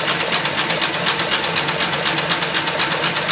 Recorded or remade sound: recorded